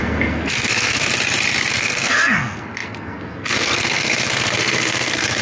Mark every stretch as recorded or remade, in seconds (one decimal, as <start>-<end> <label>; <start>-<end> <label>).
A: 0.0-1.1 remade; 1.1-1.7 recorded; 1.7-5.4 remade